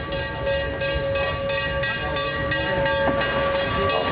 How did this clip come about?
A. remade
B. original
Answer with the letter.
B